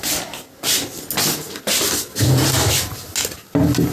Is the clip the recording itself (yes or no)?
yes